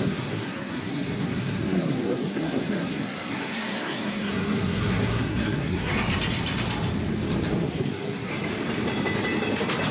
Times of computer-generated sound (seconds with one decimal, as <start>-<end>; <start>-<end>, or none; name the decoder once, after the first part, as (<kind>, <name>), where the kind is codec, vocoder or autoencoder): 0.0-5.9 (codec, SNAC); 7.7-8.3